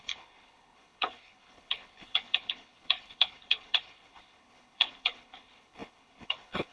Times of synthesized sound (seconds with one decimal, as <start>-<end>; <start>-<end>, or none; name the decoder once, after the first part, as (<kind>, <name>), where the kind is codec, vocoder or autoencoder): 0.0-6.7 (codec, HILCodec)